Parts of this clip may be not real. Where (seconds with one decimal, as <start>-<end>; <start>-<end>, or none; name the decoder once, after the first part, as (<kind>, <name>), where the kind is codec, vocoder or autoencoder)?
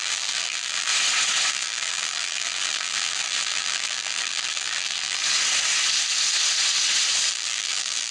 0.0-0.9 (vocoder, BigVGAN v2); 1.5-5.2; 7.3-8.1